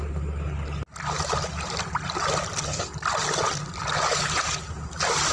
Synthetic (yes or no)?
no